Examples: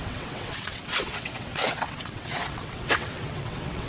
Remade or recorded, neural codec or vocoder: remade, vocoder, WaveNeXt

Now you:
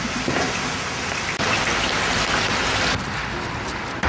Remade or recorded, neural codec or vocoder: recorded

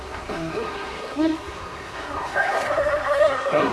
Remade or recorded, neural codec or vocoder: remade, codec, SNAC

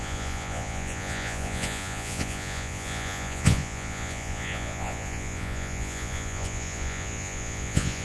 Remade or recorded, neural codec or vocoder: remade, vocoder, Vocos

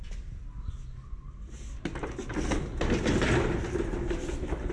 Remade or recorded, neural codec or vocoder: recorded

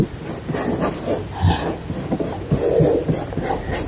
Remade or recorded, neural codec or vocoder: recorded